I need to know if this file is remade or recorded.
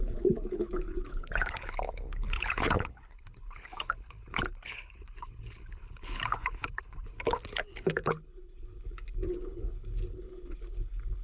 remade